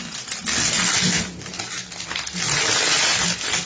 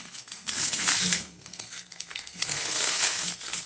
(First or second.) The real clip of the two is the first